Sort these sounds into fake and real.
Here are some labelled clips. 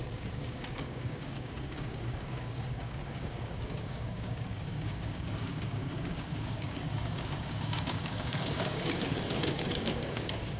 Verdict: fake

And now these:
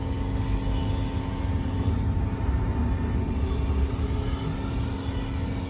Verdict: real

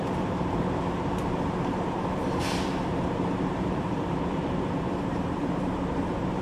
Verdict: fake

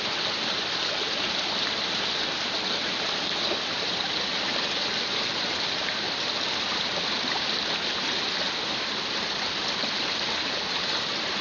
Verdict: real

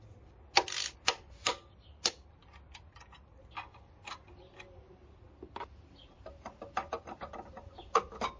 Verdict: real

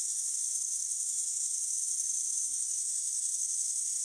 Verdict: fake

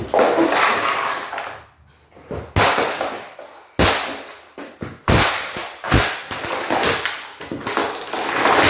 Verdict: real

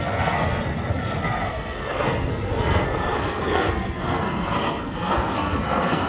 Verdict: fake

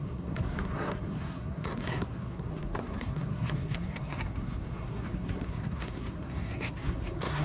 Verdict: fake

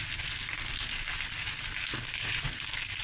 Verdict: real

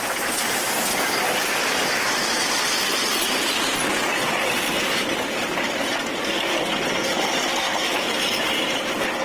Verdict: real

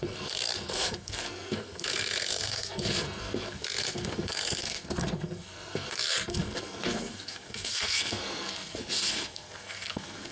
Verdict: fake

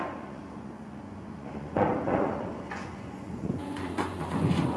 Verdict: fake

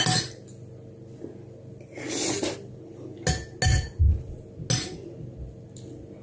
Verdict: real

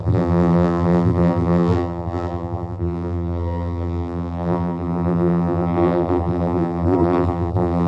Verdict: fake